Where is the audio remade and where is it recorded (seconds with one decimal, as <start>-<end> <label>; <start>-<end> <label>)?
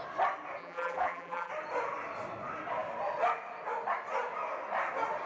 0.0-0.6 recorded; 0.6-1.5 remade; 1.5-5.3 recorded